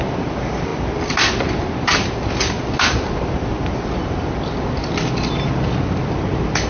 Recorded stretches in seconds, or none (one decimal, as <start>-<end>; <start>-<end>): 0.0-6.7